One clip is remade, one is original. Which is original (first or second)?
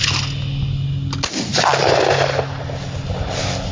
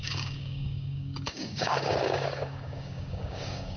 first